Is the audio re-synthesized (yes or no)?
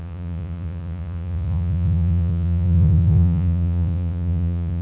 yes